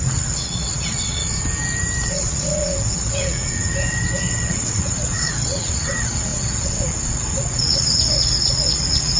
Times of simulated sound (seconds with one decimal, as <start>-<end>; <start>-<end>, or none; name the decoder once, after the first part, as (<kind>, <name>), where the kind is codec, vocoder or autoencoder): 0.0-1.2 (vocoder, WaveNeXt); 2.0-9.2